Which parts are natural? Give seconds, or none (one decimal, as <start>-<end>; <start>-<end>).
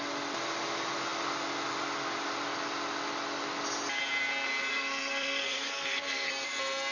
0.0-4.7; 6.3-6.9